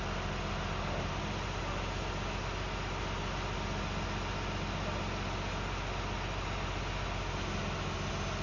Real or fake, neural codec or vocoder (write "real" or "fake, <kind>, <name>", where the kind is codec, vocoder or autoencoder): real